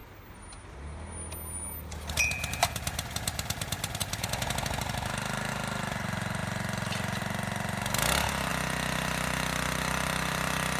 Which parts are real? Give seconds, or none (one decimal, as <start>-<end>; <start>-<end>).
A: 0.0-10.8